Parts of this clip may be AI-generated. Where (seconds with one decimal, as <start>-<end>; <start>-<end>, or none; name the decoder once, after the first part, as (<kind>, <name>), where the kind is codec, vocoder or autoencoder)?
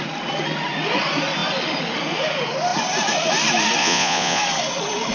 3.8-4.4 (vocoder, Vocos)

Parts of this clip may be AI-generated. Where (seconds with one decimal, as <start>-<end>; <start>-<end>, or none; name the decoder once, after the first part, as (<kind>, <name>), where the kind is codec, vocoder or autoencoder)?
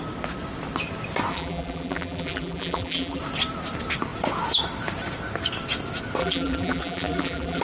1.3-3.2 (vocoder, BigVGAN v2); 6.2-7.6